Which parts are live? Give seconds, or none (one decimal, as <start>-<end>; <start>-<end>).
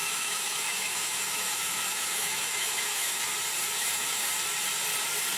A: 3.2-3.8; 4.3-5.4